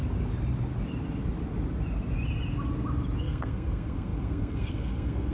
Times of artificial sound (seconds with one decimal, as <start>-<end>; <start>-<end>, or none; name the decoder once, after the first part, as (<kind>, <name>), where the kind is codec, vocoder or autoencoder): 3.2-5.3 (codec, SNAC)